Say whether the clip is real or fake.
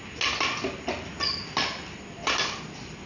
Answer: real